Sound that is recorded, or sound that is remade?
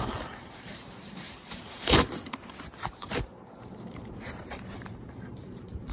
remade